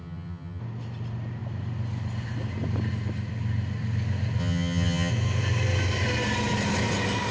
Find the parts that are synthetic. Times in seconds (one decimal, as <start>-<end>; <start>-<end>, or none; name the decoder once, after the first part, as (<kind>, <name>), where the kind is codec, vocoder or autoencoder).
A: 0.0-0.6 (vocoder, HiFi-GAN); 4.4-5.1